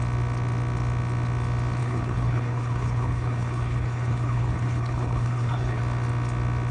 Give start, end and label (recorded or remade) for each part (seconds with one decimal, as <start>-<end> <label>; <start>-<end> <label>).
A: 0.0-1.8 recorded; 1.8-5.8 remade; 5.8-6.7 recorded